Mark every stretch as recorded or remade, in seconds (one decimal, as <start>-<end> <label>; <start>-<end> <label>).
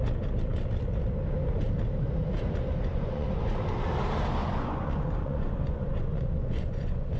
0.0-2.9 recorded; 2.9-3.6 remade; 3.6-4.4 recorded; 4.4-7.2 remade